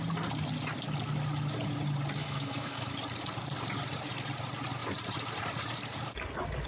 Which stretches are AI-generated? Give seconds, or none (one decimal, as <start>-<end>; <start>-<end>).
2.2-2.9